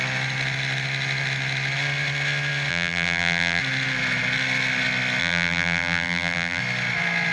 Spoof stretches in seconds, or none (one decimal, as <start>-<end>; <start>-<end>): 2.7-3.6; 5.2-6.6